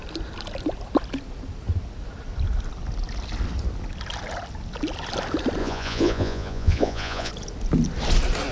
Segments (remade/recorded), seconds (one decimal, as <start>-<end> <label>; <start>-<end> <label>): 0.0-5.6 recorded; 5.6-7.3 remade; 7.3-8.5 recorded